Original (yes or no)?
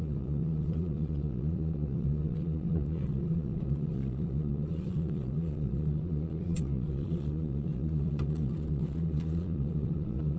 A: no